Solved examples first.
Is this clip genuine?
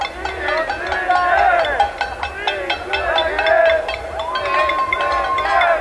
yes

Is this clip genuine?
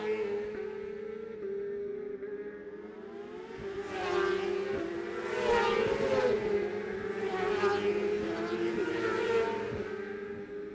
yes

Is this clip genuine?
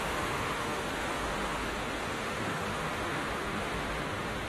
no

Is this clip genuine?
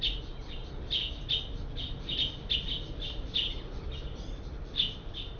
yes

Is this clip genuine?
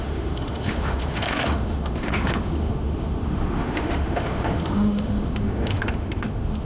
no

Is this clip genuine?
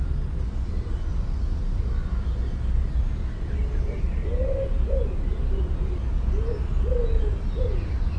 yes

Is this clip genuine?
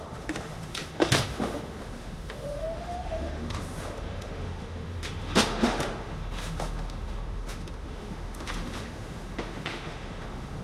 no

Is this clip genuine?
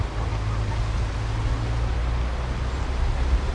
yes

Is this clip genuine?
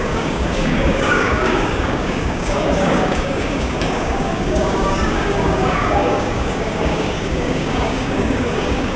no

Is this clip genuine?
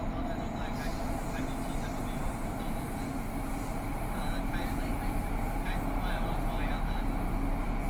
yes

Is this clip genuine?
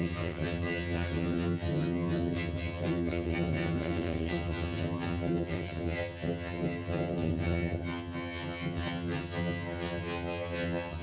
no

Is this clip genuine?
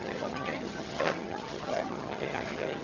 no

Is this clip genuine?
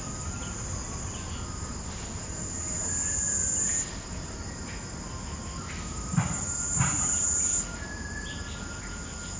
yes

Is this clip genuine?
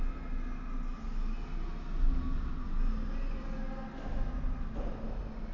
yes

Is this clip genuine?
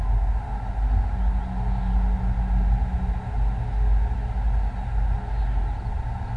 yes